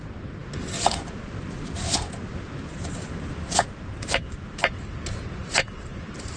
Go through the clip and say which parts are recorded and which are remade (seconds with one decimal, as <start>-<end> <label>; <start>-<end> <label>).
0.0-6.4 recorded